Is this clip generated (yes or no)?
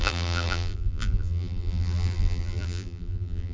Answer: yes